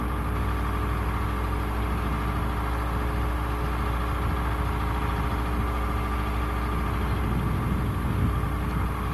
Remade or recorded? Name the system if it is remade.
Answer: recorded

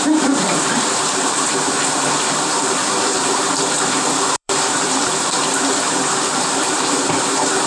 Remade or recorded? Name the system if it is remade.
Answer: remade, vocoder, BigVGAN v2